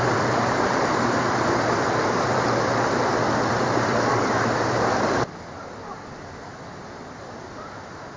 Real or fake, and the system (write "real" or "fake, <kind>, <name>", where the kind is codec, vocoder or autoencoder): fake, vocoder, BigVGAN v2